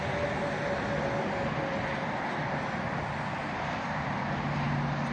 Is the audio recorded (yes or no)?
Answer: yes